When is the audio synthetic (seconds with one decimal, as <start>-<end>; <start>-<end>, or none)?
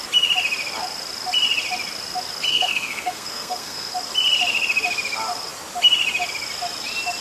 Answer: 2.5-3.9